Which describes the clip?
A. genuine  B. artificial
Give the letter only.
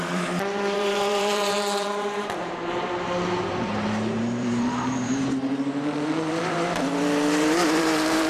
B